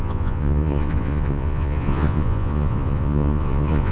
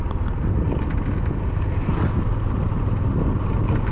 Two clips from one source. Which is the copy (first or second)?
first